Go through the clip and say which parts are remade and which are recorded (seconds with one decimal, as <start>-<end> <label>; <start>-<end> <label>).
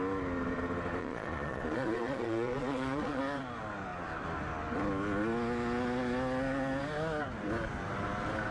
0.0-1.0 recorded; 1.0-3.2 remade; 3.2-8.5 recorded